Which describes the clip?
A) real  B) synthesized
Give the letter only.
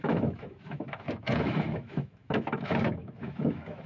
B